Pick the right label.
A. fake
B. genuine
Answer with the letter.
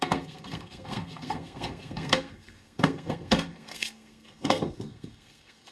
A